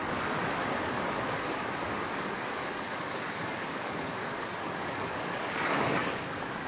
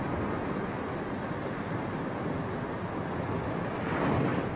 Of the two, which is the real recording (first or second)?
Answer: second